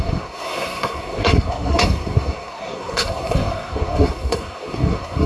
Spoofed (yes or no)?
yes